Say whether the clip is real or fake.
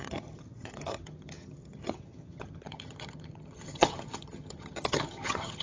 fake